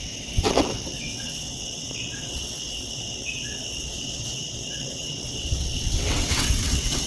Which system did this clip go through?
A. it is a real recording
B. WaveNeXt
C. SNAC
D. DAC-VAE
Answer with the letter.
B